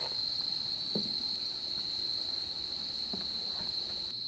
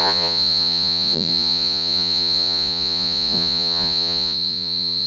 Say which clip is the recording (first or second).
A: first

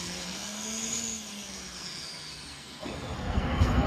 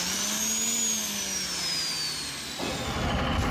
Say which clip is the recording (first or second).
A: second